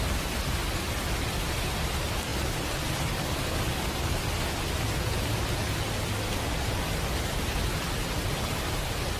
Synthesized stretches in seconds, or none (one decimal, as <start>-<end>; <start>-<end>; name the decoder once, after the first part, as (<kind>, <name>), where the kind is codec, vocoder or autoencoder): none